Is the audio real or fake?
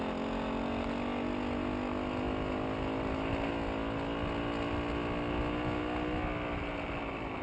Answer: real